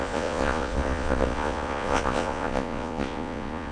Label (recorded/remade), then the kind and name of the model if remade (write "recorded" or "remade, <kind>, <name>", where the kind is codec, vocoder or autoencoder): remade, vocoder, Vocos